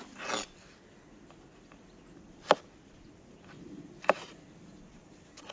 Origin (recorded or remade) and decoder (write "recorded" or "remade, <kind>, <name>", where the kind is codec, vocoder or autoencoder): recorded